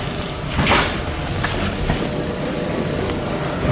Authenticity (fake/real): real